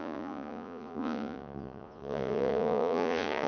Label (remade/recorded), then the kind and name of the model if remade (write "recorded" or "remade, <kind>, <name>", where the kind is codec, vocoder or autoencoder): remade, vocoder, Vocos